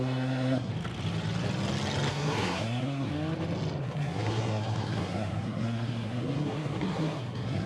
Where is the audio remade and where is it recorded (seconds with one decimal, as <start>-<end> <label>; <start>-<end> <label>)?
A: 0.0-0.7 remade; 0.7-2.1 recorded; 2.1-3.1 remade; 3.1-3.8 recorded; 3.8-7.7 remade

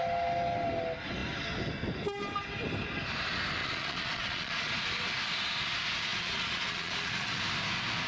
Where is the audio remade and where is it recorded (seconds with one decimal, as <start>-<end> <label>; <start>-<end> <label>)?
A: 0.0-3.6 recorded; 3.6-4.7 remade; 4.7-6.1 recorded; 6.1-7.4 remade; 7.4-8.1 recorded